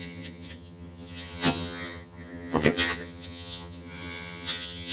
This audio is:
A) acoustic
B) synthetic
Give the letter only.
B